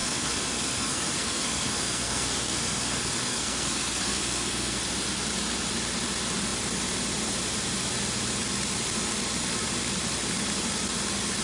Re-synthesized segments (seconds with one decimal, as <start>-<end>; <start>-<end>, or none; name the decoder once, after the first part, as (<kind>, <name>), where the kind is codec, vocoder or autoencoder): 0.0-4.8 (codec, SNAC)